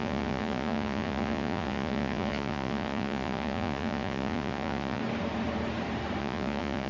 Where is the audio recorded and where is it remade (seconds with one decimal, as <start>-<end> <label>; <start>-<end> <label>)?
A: 0.0-5.0 remade; 5.0-6.2 recorded; 6.2-6.9 remade

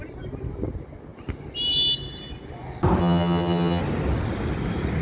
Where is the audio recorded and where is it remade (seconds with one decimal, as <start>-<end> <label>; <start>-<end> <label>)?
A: 0.0-3.0 recorded; 3.0-3.8 remade; 3.8-5.0 recorded

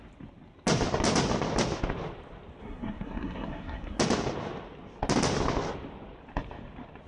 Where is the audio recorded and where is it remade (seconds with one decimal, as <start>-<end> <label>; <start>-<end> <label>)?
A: 0.0-2.6 recorded; 2.6-4.0 remade; 4.0-7.1 recorded

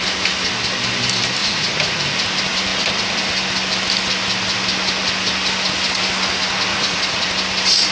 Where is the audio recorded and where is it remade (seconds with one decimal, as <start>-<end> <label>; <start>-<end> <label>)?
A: 0.0-1.4 recorded; 1.4-2.0 remade; 2.0-6.7 recorded; 6.7-7.3 remade; 7.3-7.9 recorded

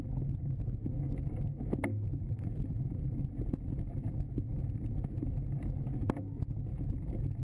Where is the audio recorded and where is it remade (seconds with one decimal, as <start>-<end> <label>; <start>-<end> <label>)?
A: 0.0-2.1 recorded; 2.1-5.3 remade; 5.3-6.7 recorded; 6.7-7.4 remade

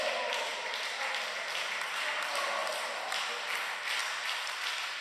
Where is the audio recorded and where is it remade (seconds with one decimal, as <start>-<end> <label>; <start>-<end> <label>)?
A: 0.0-4.0 recorded; 4.0-5.0 remade

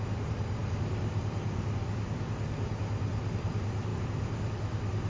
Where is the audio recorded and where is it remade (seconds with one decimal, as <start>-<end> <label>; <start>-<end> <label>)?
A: 0.0-5.1 recorded

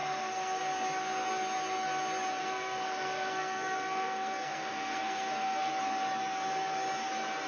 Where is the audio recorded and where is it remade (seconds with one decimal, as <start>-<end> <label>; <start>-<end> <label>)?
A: 0.0-0.6 remade; 0.6-2.4 recorded; 2.4-5.7 remade; 5.7-7.5 recorded